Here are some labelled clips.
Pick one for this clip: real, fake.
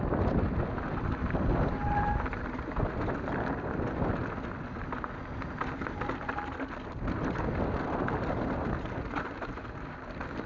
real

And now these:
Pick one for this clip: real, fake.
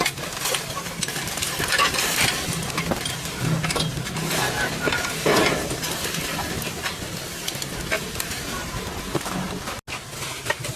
real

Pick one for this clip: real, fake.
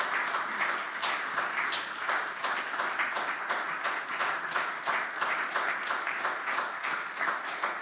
real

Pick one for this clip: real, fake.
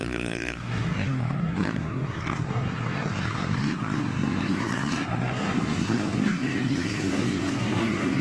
fake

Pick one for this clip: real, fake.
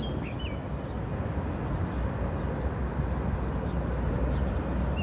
real